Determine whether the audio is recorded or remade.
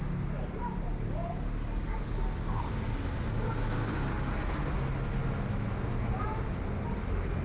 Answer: recorded